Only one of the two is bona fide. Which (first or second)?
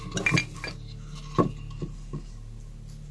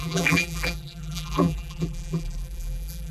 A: first